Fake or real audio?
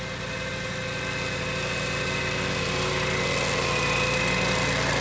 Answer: real